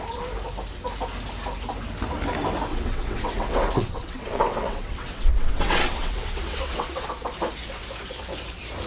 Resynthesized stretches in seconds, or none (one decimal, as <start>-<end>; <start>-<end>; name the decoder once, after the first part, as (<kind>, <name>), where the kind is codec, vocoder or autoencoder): 2.7-7.1 (vocoder, WaveNeXt)